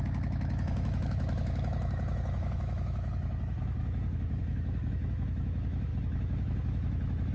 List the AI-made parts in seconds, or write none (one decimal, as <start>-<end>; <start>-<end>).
0.0-7.3